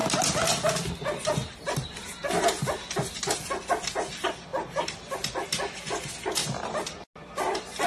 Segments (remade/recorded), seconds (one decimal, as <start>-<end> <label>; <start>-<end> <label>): 0.0-4.5 recorded; 4.5-5.5 remade; 5.5-7.9 recorded